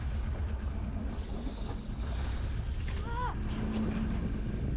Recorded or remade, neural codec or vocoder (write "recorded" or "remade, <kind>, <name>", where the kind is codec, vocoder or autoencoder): recorded